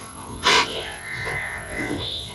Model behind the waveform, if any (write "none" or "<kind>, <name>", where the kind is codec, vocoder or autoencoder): vocoder, WaveNeXt